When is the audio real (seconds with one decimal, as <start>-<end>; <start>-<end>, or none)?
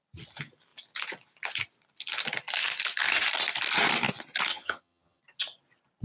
0.0-4.5; 5.2-6.0